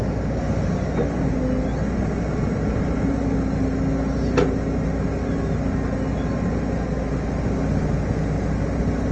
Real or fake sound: real